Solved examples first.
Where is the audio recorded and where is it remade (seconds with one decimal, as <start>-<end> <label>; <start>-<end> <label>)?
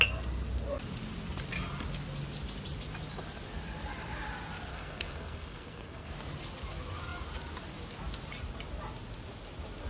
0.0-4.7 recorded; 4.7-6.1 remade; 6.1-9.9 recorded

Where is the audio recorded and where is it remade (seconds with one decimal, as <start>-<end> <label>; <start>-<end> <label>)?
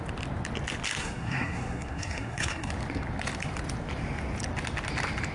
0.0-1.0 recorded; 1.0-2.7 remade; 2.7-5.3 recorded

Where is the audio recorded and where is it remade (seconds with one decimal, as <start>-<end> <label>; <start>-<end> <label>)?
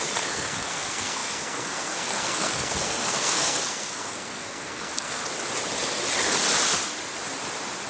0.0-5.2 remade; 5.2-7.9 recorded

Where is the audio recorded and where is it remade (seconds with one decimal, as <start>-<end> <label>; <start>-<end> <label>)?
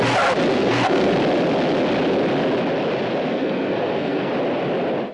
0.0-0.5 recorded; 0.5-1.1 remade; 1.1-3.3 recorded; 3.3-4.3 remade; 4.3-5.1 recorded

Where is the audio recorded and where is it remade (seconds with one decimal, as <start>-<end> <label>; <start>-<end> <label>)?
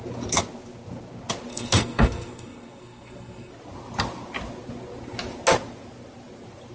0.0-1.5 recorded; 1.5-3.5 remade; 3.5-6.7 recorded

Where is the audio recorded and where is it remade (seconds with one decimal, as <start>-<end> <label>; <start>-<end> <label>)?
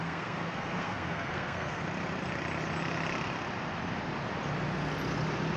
0.0-1.8 remade; 1.8-5.6 recorded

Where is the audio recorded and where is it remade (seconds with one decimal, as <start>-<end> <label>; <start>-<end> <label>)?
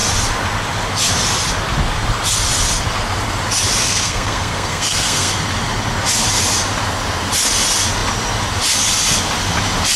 0.0-3.8 recorded; 3.8-5.3 remade; 5.3-10.0 recorded